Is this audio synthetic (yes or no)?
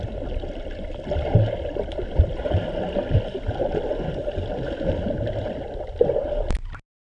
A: no